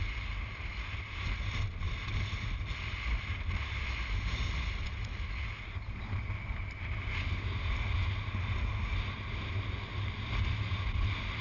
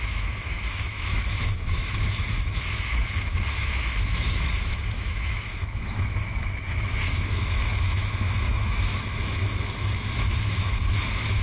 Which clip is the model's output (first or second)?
second